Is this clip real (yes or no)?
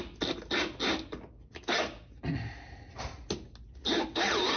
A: yes